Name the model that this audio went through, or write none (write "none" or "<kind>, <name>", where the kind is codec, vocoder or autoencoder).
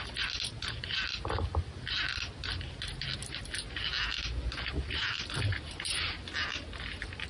none